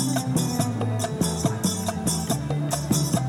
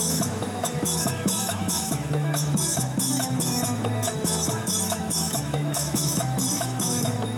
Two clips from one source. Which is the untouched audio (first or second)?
first